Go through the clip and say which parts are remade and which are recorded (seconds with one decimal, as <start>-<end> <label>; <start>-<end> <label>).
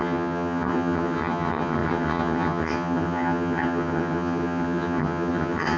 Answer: 0.0-5.8 remade